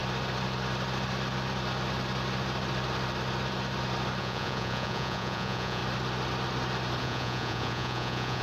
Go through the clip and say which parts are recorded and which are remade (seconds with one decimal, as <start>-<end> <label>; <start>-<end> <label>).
0.0-4.2 recorded; 4.2-5.8 remade; 5.8-7.0 recorded; 7.0-8.4 remade

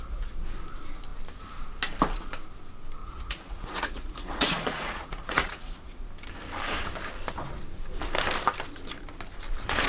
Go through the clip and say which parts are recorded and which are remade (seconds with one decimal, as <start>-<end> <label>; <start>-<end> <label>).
0.0-3.0 recorded; 3.0-6.1 remade; 6.1-9.9 recorded

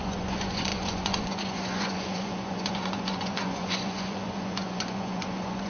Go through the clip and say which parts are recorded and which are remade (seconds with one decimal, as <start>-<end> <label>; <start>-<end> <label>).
0.0-5.7 remade